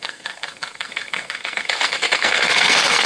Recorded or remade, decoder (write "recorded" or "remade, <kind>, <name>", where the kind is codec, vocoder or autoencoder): remade, codec, SNAC